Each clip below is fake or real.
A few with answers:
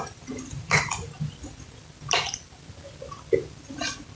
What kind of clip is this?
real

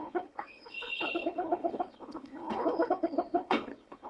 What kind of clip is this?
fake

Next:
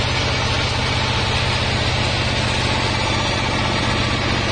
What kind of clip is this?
real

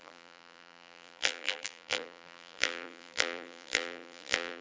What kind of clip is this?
fake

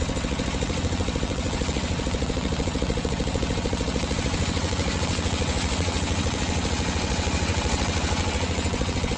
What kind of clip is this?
fake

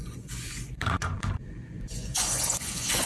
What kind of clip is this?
fake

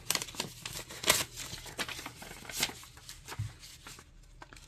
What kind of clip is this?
real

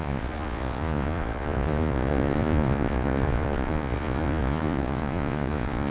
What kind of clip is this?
fake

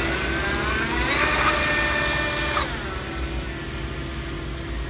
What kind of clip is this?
real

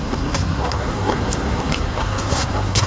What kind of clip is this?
fake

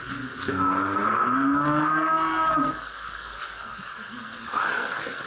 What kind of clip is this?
fake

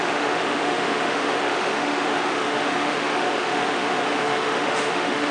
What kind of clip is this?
fake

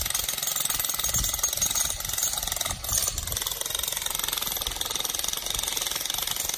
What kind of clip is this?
real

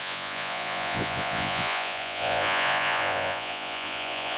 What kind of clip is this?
fake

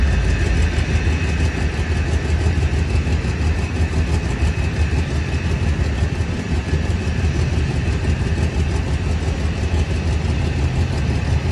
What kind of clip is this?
real